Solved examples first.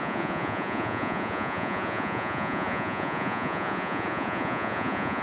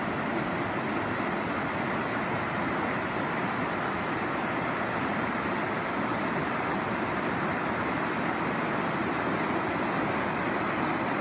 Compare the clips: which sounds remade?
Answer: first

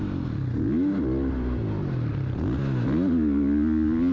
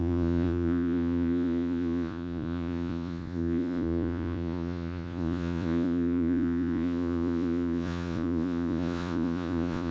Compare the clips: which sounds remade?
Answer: second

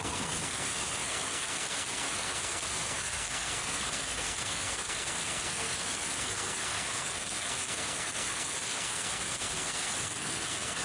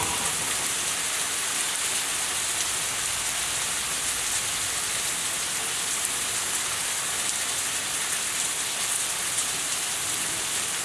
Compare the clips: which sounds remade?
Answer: first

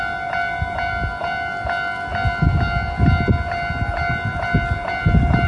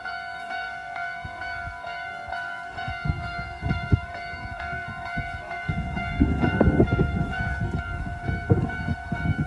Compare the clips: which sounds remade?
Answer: second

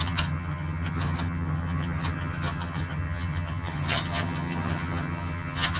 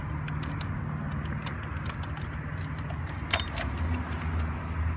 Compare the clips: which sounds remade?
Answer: first